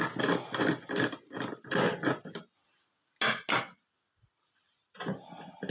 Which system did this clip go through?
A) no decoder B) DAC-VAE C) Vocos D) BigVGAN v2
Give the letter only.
A